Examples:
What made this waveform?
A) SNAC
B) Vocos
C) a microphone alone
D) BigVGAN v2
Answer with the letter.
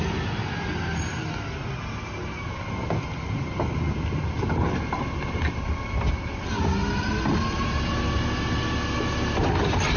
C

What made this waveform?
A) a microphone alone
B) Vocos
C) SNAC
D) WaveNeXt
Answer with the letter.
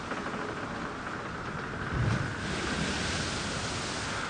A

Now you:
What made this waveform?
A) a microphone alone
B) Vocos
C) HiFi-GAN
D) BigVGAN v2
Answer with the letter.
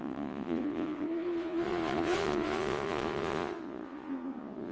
B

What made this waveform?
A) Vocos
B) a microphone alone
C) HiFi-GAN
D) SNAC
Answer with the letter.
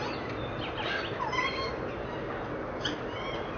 B